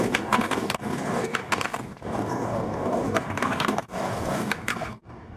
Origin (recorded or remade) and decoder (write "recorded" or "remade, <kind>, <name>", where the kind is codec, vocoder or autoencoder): remade, codec, DAC